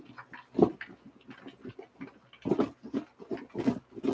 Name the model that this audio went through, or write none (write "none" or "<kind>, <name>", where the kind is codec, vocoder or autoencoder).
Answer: none